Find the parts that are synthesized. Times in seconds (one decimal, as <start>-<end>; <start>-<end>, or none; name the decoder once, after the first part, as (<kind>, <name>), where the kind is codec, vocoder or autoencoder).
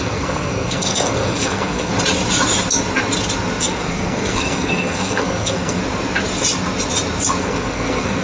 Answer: 0.0-1.9 (codec, SNAC); 3.6-5.8; 7.4-8.2